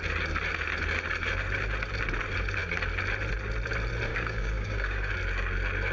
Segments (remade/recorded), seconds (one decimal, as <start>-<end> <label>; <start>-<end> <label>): 0.0-4.1 recorded; 4.1-5.1 remade; 5.1-5.9 recorded